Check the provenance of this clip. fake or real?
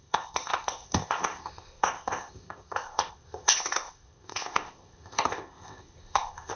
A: fake